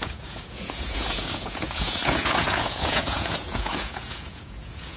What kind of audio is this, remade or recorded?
remade